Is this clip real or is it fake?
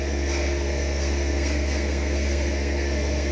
fake